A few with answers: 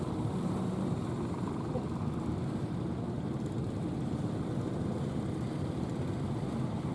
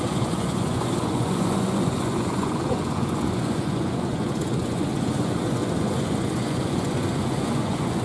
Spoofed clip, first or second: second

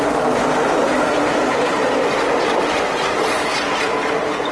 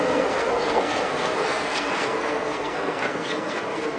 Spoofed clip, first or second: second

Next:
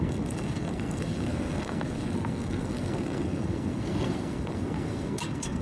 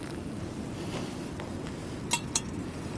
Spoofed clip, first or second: first